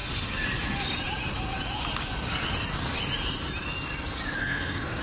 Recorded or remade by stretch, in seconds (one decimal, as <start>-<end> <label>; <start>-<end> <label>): 0.0-4.4 recorded; 4.4-5.0 remade